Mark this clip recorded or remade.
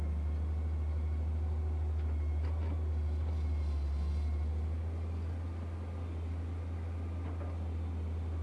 recorded